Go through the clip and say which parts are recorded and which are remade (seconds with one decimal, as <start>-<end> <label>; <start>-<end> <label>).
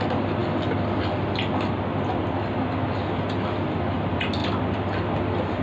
0.0-5.6 recorded